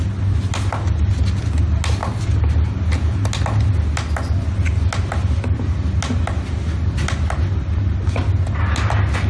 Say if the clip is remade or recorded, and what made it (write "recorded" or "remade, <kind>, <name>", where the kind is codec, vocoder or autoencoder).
recorded